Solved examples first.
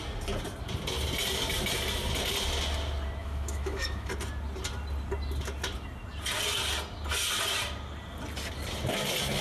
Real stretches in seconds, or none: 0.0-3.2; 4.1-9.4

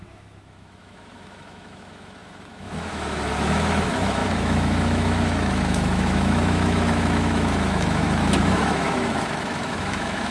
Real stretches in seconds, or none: none

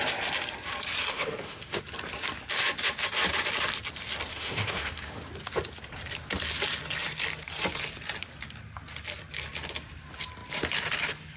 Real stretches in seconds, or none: 0.0-1.1; 1.8-4.3; 5.2-11.4

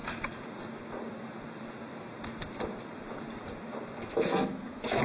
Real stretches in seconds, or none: 0.0-4.1

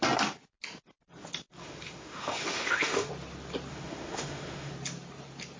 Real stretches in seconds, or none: 0.0-1.6; 3.1-3.7; 4.7-5.6

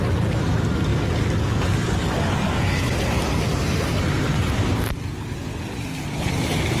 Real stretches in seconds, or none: 0.0-6.8